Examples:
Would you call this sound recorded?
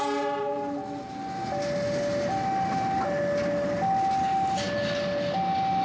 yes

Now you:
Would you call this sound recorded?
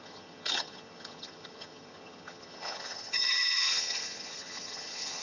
no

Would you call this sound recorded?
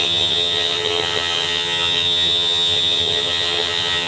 no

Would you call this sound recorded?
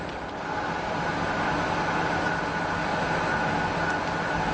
yes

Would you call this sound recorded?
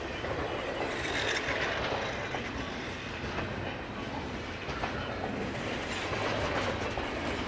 yes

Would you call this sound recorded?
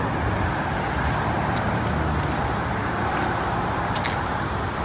yes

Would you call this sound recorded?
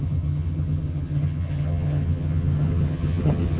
no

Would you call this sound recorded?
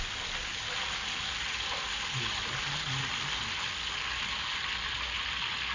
yes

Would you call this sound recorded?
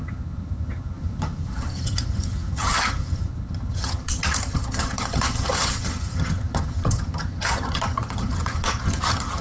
no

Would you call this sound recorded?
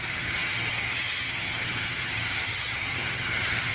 no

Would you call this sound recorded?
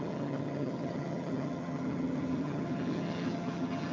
no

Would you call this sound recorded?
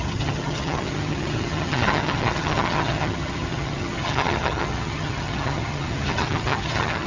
no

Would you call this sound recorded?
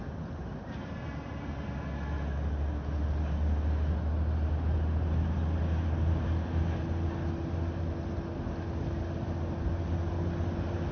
yes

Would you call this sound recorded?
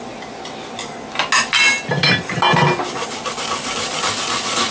yes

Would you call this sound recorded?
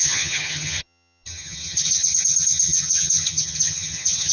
no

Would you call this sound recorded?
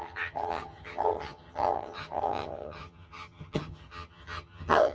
no